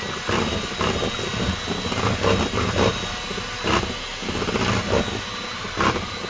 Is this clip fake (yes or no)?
no